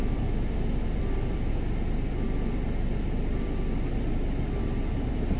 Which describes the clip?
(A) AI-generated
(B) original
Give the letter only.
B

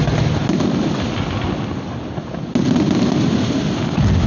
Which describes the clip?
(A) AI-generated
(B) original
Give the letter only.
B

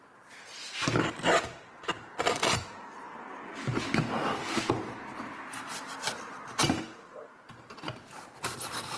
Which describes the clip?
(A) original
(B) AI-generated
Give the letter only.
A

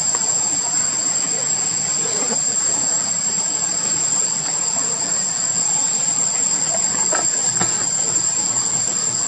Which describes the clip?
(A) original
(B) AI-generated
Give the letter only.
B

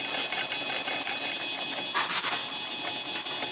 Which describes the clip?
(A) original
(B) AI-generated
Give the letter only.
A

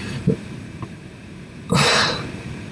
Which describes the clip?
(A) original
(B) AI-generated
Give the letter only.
B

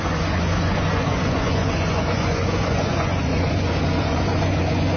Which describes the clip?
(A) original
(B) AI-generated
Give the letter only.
B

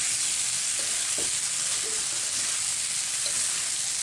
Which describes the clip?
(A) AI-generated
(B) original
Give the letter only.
B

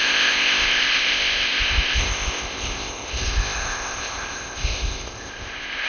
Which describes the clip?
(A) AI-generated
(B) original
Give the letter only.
A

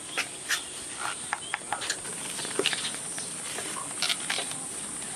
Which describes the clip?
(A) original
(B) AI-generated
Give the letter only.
A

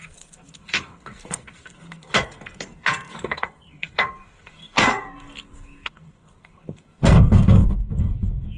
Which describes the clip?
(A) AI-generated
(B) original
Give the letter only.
A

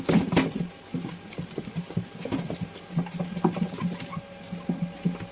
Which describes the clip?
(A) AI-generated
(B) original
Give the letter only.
B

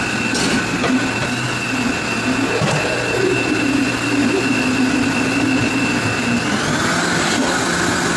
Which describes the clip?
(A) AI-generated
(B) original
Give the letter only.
B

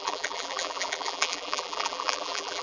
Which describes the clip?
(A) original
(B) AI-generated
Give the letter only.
B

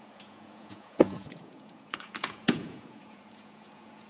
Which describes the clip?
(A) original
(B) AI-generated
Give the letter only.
B